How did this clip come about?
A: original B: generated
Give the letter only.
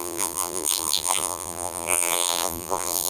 B